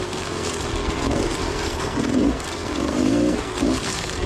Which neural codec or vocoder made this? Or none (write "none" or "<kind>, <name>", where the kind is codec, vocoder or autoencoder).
codec, SNAC